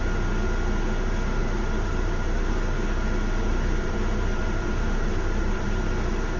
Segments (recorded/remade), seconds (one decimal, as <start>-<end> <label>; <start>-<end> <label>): 0.0-1.4 recorded; 1.4-2.5 remade; 2.5-3.5 recorded; 3.5-5.9 remade; 5.9-6.4 recorded